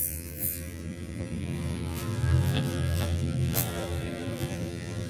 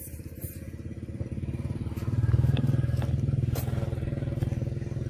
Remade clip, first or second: first